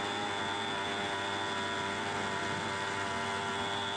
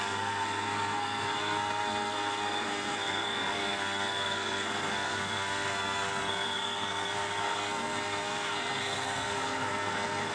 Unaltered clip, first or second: first